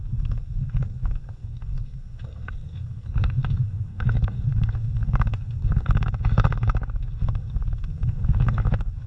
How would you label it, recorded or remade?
remade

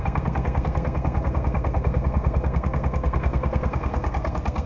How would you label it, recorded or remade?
remade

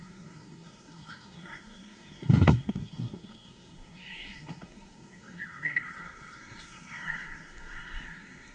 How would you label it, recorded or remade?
remade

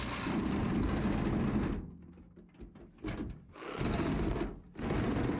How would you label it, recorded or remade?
recorded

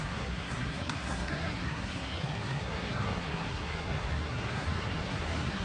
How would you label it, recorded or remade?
remade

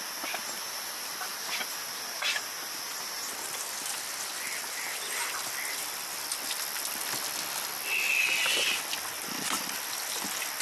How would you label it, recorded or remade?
recorded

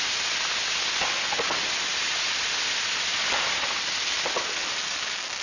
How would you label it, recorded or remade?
recorded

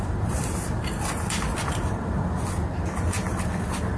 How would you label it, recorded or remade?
recorded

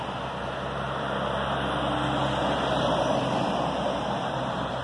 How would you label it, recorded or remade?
recorded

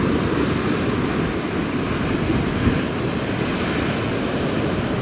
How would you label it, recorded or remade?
recorded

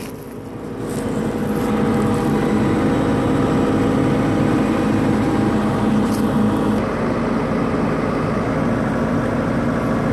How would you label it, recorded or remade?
recorded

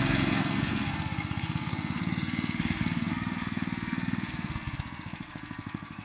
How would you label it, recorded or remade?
remade